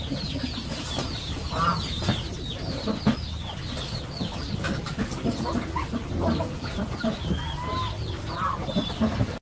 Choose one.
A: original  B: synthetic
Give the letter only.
A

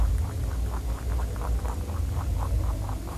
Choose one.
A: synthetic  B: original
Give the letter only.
B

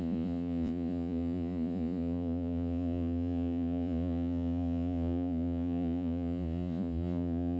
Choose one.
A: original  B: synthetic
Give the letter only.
B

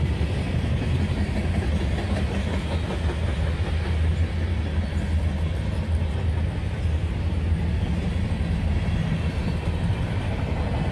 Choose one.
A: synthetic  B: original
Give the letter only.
B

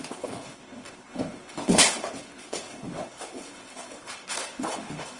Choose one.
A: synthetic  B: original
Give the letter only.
A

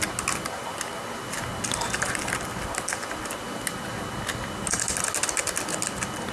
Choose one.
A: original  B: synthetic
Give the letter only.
A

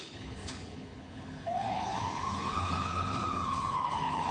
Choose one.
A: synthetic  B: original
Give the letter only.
A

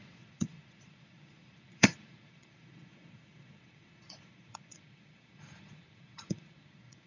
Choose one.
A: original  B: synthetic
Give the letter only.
B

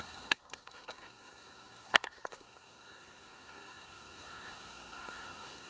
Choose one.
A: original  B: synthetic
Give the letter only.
B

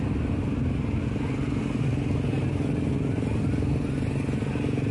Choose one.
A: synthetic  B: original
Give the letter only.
B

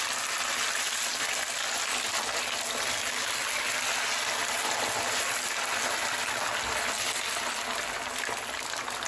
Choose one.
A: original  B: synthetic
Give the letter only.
A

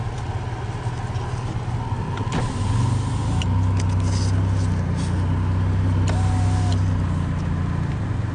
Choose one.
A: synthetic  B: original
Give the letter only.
B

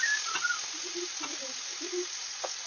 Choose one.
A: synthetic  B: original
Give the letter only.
B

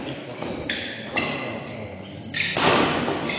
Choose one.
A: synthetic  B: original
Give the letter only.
B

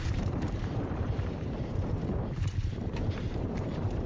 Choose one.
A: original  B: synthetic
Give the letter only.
B